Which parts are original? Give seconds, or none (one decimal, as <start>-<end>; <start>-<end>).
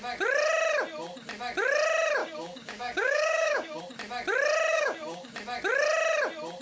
0.0-2.2; 3.8-4.7; 5.3-6.6